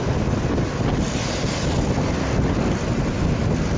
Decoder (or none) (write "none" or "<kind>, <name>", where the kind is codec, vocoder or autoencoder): none